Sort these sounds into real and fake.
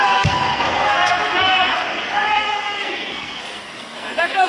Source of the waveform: fake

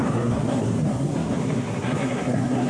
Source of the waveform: fake